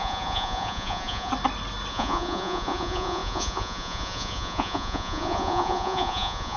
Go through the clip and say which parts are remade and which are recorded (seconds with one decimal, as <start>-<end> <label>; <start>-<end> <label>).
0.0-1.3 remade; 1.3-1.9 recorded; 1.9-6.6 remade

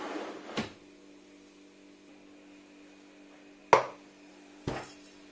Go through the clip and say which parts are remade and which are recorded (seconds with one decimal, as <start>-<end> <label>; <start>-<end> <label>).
0.0-5.3 recorded

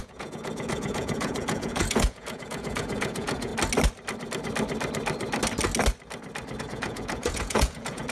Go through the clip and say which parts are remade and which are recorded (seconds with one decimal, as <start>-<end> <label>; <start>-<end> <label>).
0.0-3.5 remade; 3.5-6.6 recorded; 6.6-8.1 remade